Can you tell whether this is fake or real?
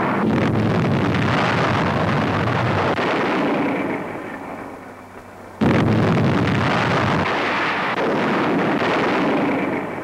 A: real